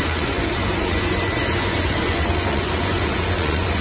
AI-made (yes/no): yes